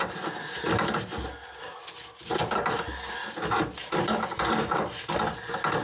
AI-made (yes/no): no